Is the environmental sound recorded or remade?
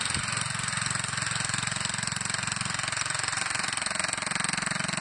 recorded